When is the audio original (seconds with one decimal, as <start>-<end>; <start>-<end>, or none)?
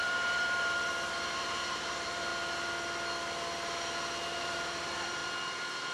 2.3-4.4; 5.2-5.9